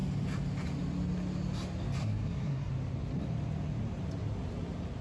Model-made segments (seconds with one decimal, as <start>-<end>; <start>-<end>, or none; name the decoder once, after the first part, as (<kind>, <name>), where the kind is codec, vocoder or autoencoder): 2.0-2.7 (codec, SNAC)